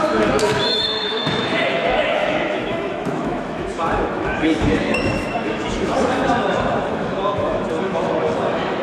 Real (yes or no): no